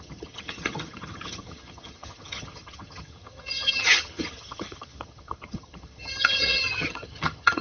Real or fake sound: fake